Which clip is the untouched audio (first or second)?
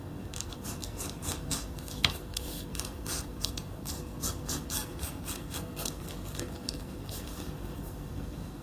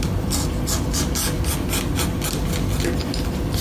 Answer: second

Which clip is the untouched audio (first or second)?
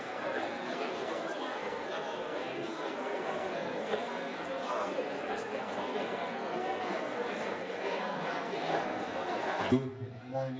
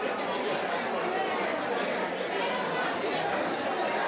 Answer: second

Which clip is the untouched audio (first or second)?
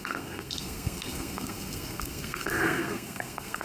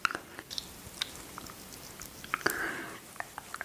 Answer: second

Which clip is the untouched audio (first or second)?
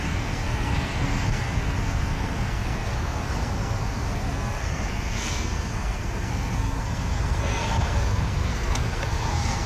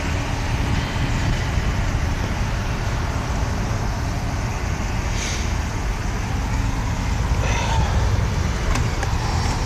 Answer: second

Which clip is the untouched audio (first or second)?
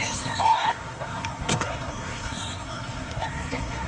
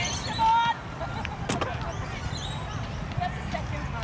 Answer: second